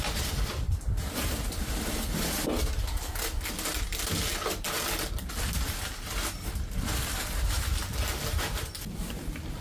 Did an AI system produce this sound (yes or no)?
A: no